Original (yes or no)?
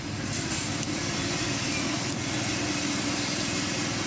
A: yes